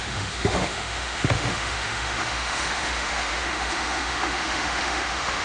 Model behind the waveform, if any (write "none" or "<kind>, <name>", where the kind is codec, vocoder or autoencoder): autoencoder, DAC-VAE